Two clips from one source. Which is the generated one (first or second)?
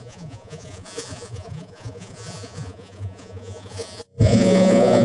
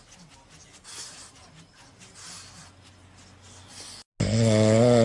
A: first